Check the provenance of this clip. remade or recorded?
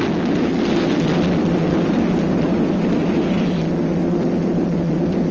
recorded